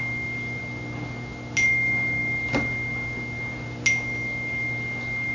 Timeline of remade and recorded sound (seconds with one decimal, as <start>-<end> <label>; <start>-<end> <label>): 0.0-5.3 recorded

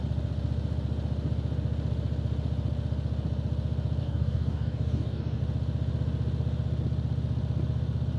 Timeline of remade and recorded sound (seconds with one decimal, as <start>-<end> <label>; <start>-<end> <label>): 0.0-4.0 recorded; 4.0-5.4 remade; 5.4-8.2 recorded

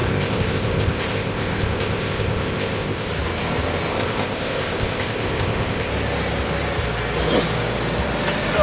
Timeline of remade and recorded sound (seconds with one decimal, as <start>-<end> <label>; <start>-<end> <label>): 0.0-3.1 remade; 3.1-3.9 recorded; 3.9-5.9 remade; 5.9-8.6 recorded

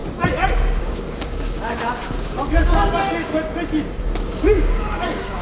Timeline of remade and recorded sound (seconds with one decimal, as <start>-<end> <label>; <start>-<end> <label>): 0.0-0.8 recorded; 0.8-3.3 remade; 3.3-4.3 recorded; 4.3-5.4 remade

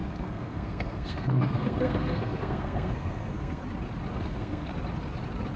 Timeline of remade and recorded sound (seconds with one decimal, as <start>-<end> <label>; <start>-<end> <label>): 0.0-3.6 remade; 3.6-4.1 recorded; 4.1-4.7 remade; 4.7-5.6 recorded